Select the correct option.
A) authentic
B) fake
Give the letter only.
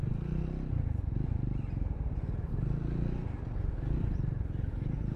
A